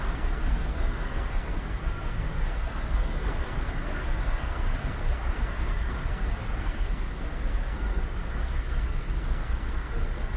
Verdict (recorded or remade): remade